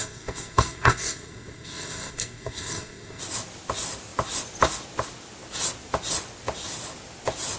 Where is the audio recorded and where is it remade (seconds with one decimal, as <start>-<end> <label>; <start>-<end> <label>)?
0.0-3.2 remade; 3.2-7.6 recorded